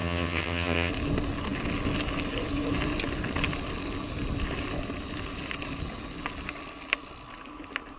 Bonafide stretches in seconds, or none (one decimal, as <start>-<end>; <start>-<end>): 0.9-8.0

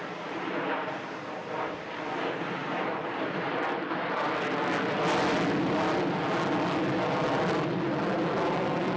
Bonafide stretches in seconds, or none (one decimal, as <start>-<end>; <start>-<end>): 0.0-9.0

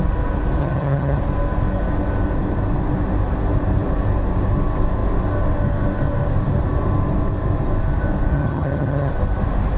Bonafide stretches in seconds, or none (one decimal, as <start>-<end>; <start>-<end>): 0.0-0.6; 1.2-8.3; 9.1-9.8